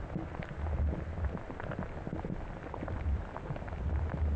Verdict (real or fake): real